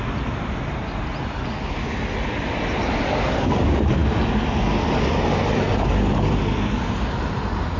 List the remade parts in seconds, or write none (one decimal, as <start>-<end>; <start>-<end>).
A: none